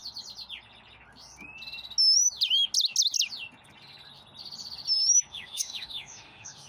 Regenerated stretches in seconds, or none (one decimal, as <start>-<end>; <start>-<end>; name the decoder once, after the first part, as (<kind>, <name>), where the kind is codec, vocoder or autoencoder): 5.3-6.7 (autoencoder, DAC-VAE)

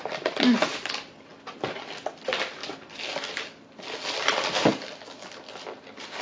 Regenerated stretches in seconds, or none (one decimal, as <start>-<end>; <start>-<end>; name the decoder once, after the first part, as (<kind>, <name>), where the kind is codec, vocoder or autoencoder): none

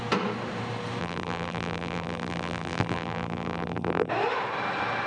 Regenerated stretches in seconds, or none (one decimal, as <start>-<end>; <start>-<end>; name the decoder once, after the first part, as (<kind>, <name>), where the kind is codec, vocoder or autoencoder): 1.0-4.1 (vocoder, BigVGAN v2)

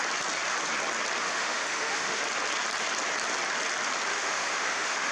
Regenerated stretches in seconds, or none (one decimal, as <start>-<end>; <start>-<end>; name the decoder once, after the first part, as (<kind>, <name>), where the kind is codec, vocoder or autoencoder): 1.2-2.2 (autoencoder, DAC-VAE); 4.1-5.1